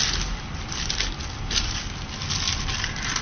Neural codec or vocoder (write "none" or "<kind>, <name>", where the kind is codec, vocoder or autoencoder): none